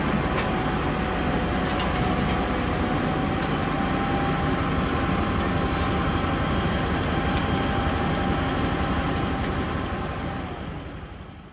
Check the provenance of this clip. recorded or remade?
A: recorded